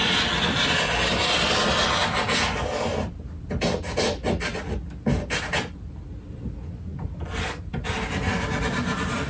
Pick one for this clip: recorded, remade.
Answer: recorded